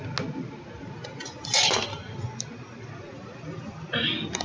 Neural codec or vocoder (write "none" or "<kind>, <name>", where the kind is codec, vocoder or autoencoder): none